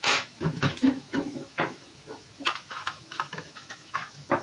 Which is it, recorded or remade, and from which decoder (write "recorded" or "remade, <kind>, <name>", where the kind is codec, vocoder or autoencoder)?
remade, autoencoder, DAC-VAE